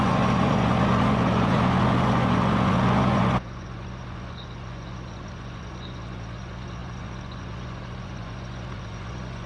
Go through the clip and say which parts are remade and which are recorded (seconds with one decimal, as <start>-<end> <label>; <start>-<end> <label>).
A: 0.0-9.5 remade